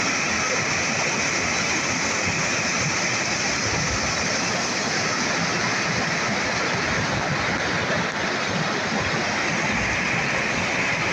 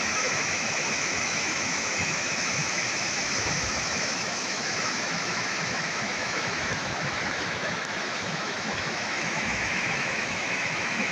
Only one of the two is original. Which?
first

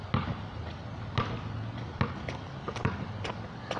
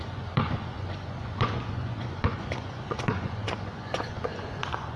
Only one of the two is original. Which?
first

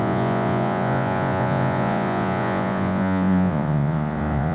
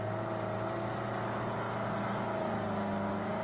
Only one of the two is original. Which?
second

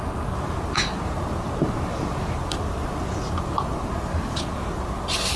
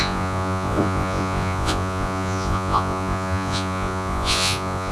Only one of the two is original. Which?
first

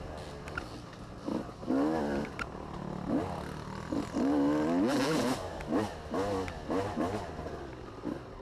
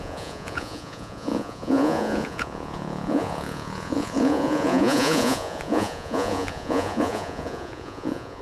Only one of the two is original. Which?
first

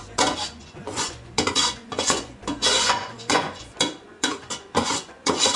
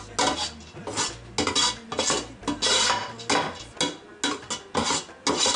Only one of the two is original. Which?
second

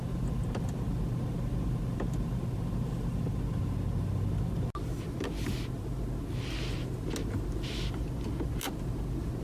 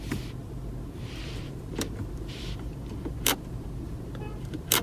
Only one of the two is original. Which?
first